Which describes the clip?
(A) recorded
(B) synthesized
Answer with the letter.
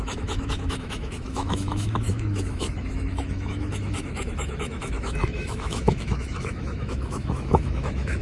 B